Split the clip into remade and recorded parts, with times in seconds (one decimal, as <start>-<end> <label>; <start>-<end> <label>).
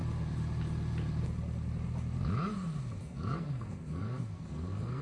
0.0-3.0 recorded; 3.0-5.0 remade